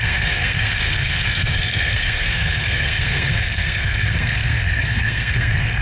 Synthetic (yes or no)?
yes